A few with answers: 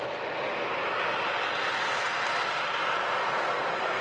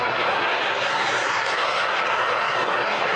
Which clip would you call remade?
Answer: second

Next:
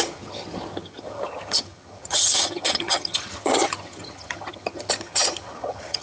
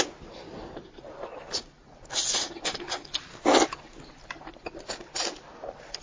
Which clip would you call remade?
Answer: first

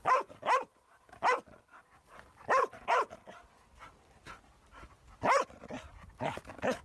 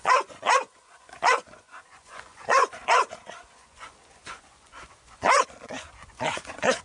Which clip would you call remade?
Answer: second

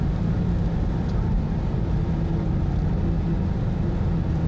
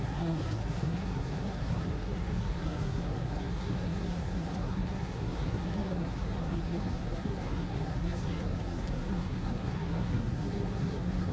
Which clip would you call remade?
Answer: second